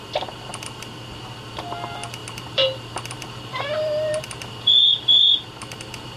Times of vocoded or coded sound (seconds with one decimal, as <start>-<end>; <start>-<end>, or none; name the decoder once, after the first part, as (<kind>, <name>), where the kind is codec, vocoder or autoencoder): 2.2-6.2 (vocoder, BigVGAN v2)